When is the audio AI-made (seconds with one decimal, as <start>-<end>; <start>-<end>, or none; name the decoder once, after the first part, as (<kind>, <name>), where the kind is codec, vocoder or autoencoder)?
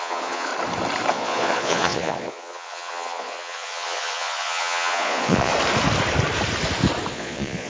0.0-0.5 (vocoder, Vocos); 1.1-5.5; 7.1-7.7